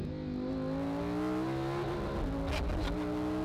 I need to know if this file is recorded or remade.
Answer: recorded